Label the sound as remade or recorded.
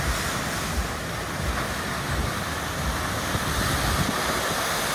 recorded